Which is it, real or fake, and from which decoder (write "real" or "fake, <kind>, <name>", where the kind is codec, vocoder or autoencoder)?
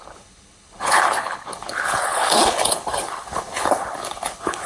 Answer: fake, codec, HILCodec